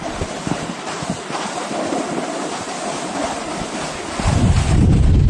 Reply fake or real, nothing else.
real